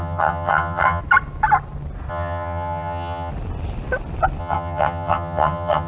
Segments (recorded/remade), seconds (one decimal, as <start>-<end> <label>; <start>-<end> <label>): 0.0-1.0 remade; 1.0-2.1 recorded; 2.1-3.3 remade; 3.3-4.4 recorded; 4.4-5.9 remade

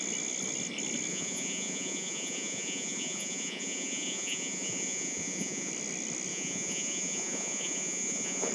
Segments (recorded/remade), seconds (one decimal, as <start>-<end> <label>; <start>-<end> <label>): 0.0-1.1 recorded; 1.1-5.7 remade; 5.7-6.3 recorded; 6.3-8.5 remade

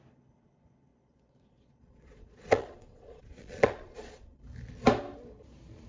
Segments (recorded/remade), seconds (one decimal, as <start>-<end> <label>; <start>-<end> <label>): 0.0-0.9 recorded; 0.9-4.4 remade; 4.4-5.9 recorded

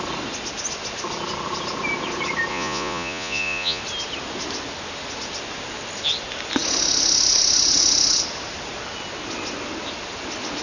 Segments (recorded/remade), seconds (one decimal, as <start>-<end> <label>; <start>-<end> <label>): 0.0-2.5 recorded; 2.5-3.8 remade; 3.8-10.6 recorded

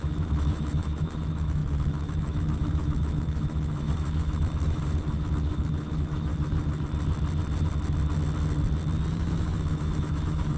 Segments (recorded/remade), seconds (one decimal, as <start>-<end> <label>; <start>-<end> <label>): 0.0-6.3 remade; 6.3-9.1 recorded; 9.1-10.6 remade

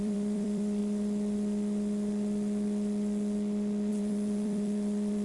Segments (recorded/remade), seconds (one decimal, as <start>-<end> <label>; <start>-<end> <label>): 0.0-0.8 remade; 0.8-3.9 recorded; 3.9-5.2 remade

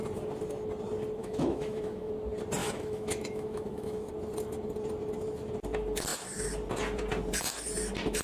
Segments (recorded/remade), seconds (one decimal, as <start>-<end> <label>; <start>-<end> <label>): 0.0-1.2 recorded; 1.2-2.1 remade; 2.1-2.6 recorded; 2.6-4.1 remade; 4.1-8.2 recorded